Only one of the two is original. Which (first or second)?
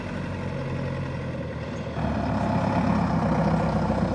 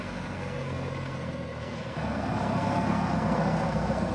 first